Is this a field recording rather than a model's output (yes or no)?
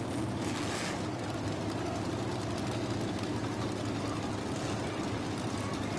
yes